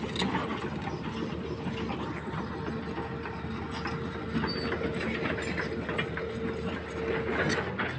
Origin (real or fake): real